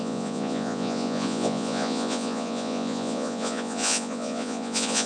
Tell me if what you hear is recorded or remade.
remade